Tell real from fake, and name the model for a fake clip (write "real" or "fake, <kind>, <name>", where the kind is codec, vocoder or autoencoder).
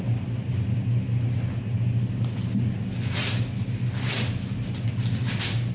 real